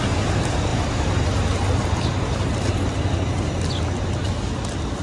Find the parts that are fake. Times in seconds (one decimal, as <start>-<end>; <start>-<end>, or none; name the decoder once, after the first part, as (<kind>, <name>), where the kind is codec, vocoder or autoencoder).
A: none